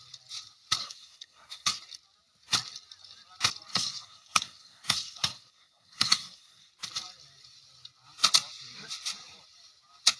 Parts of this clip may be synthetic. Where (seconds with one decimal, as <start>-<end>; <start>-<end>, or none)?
0.8-1.8; 3.7-6.7